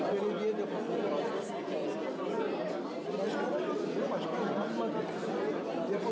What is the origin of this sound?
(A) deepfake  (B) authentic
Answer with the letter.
B